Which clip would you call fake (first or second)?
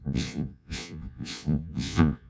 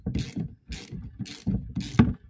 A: first